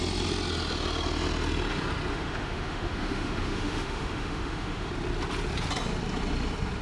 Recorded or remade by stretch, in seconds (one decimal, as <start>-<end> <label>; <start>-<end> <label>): 0.0-2.1 recorded; 2.1-4.9 remade; 4.9-6.8 recorded